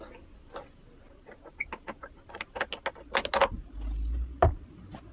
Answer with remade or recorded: recorded